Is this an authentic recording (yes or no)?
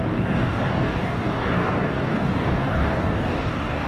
no